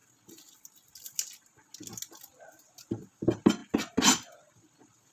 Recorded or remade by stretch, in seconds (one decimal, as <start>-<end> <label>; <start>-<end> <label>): 0.0-5.1 recorded